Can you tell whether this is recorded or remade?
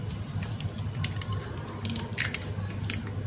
recorded